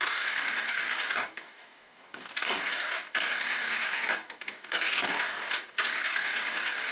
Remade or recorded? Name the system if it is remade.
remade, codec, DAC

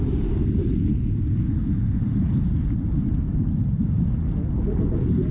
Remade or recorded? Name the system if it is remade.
recorded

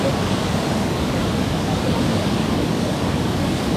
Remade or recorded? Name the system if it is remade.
remade, codec, DAC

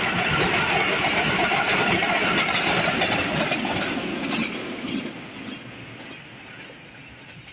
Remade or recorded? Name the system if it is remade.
recorded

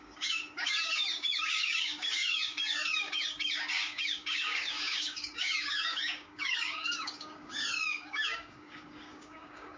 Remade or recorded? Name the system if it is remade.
remade, codec, DAC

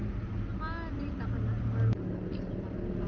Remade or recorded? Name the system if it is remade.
recorded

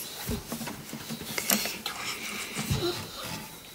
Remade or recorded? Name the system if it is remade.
recorded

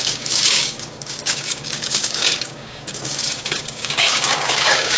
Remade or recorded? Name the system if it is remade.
remade, codec, DAC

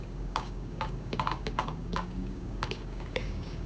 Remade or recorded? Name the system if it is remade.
remade, codec, DAC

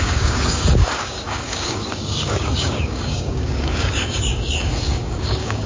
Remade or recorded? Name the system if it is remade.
remade, codec, DAC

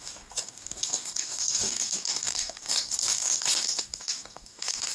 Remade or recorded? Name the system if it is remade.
remade, codec, DAC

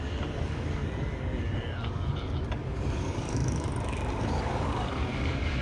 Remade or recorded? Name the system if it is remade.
remade, codec, DAC